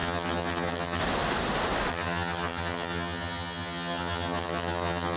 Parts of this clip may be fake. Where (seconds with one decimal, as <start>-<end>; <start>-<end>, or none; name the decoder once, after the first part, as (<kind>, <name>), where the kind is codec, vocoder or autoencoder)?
0.0-1.0 (vocoder, HiFi-GAN); 1.9-5.2